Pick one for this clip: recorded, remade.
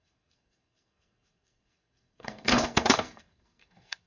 remade